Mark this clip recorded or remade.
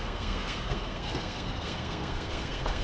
remade